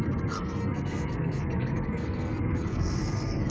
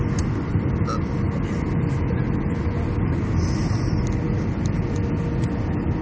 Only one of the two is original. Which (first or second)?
second